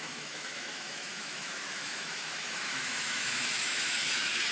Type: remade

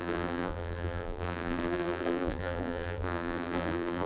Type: remade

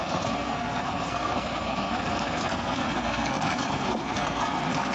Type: remade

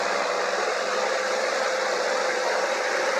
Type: remade